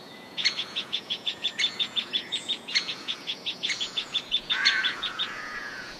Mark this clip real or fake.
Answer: fake